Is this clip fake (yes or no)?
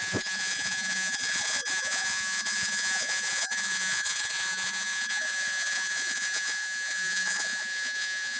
yes